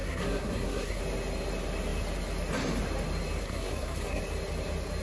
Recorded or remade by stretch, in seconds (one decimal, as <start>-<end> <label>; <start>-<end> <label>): 0.0-1.0 remade; 1.0-3.4 recorded; 3.4-4.2 remade; 4.2-5.0 recorded